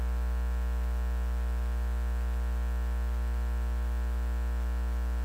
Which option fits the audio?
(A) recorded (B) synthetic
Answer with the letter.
A